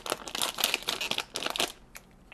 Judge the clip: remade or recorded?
recorded